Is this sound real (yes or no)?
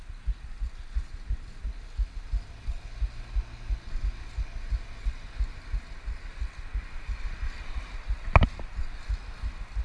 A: yes